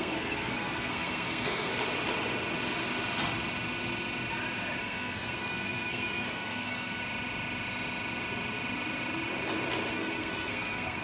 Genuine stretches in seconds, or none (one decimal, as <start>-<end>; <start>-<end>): 1.7-4.8; 7.0-9.9

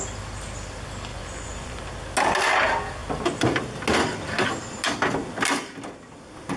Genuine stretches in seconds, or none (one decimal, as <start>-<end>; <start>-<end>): 0.0-1.1; 1.8-6.6